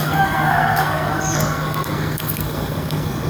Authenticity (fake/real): fake